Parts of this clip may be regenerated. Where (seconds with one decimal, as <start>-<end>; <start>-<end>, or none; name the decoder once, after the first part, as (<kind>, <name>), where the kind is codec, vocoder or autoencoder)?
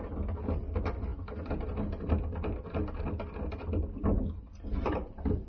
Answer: none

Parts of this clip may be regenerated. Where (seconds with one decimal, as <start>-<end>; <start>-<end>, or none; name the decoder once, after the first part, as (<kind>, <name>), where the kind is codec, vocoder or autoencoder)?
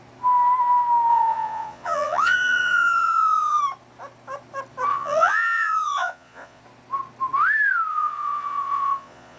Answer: 1.1-3.6 (vocoder, Vocos); 4.9-6.6; 7.9-9.4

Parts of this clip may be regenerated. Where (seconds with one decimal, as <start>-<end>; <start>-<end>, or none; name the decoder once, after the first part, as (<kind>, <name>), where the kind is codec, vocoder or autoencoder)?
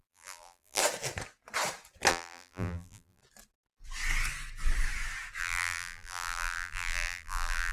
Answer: 0.0-0.8 (vocoder, BigVGAN v2); 2.1-3.2; 5.4-7.7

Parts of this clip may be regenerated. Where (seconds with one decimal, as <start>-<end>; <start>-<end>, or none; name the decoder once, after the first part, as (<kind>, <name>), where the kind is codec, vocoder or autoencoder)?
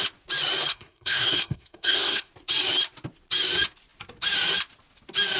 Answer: 0.7-2.3 (codec, SNAC)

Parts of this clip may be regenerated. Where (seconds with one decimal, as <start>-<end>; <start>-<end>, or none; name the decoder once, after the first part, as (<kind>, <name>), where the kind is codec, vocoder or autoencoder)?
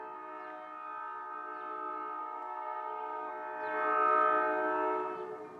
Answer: 2.2-3.3 (codec, SNAC)